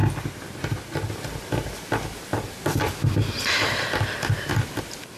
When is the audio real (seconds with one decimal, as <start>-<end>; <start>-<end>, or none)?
0.0-5.2